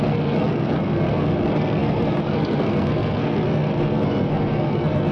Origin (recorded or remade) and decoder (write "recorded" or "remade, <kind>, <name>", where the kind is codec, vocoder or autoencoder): remade, codec, SNAC